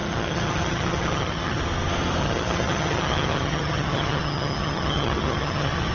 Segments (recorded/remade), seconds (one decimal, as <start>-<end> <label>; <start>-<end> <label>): 0.0-1.6 remade; 1.6-2.2 recorded; 2.2-5.9 remade